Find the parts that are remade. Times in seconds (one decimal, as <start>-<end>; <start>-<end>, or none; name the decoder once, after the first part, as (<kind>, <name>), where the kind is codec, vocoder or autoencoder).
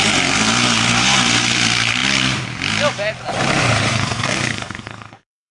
3.9-5.5 (codec, SNAC)